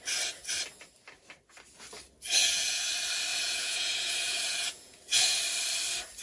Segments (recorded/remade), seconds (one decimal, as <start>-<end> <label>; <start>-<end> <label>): 0.0-2.4 recorded; 2.4-2.9 remade; 2.9-3.3 recorded; 3.3-5.4 remade; 5.4-6.2 recorded